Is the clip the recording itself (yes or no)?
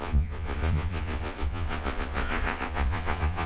no